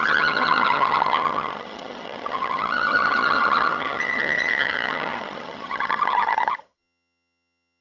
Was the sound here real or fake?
fake